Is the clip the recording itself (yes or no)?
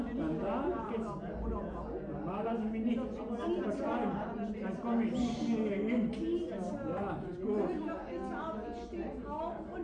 yes